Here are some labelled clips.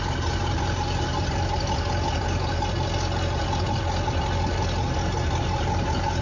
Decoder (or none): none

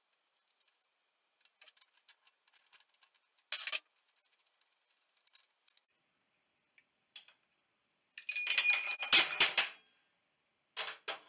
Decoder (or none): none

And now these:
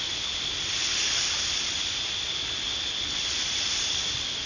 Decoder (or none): none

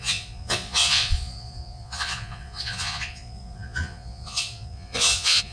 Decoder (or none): vocoder, Vocos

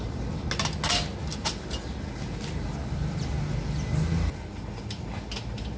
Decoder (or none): none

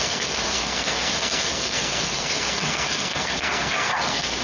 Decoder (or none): codec, SNAC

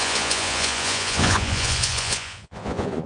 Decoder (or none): vocoder, Vocos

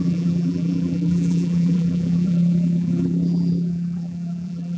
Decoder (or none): vocoder, BigVGAN v2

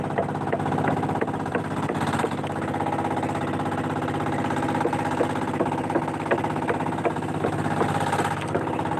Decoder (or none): none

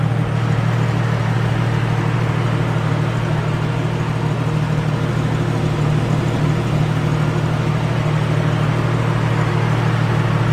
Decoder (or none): none